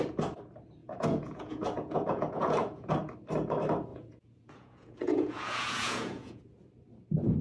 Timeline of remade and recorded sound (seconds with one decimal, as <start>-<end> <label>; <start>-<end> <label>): 0.0-0.8 recorded; 0.8-2.9 remade; 2.9-3.9 recorded; 3.9-6.4 remade; 6.4-7.4 recorded